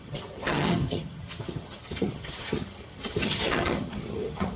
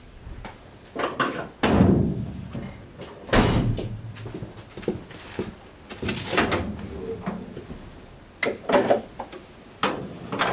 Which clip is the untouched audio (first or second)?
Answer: second